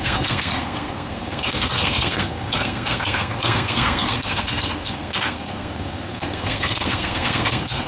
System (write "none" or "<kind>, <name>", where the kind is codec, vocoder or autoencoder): codec, SNAC